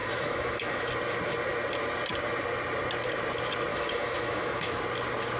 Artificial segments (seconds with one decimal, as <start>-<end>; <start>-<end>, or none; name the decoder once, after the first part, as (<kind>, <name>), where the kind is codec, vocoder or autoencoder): 0.0-0.9 (autoencoder, DAC-VAE); 3.7-4.8